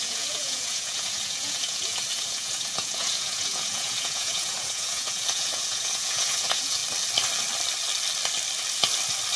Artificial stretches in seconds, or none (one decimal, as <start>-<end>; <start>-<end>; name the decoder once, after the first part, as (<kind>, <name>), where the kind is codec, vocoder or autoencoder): 0.0-6.8 (vocoder, Vocos)